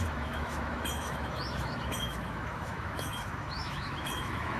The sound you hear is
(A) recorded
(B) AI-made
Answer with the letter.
B